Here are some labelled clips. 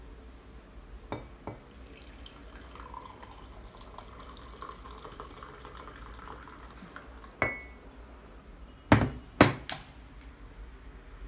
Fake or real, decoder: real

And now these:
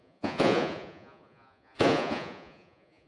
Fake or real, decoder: fake, vocoder, Vocos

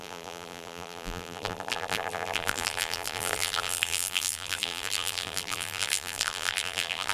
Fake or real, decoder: fake, vocoder, BigVGAN v2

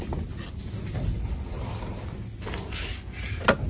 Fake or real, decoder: real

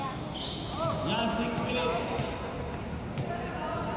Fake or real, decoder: real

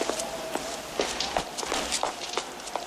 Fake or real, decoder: real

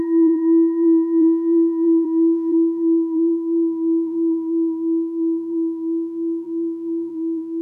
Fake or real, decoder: fake, vocoder, BigVGAN v2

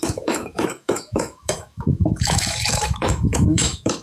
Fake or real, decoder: fake, autoencoder, DAC-VAE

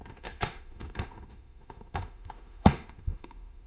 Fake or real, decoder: fake, autoencoder, DAC-VAE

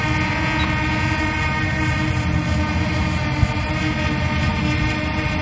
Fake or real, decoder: real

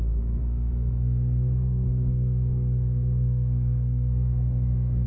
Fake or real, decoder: fake, codec, SNAC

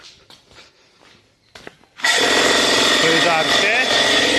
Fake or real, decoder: real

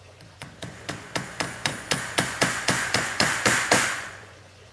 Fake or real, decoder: fake, vocoder, Vocos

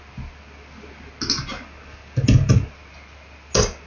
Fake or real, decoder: real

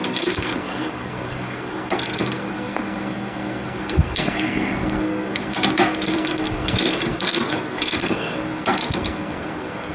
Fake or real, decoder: fake, codec, SNAC